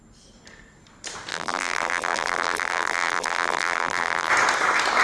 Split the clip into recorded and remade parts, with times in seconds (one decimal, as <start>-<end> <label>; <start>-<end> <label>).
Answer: 0.0-1.3 recorded; 1.3-4.3 remade; 4.3-5.0 recorded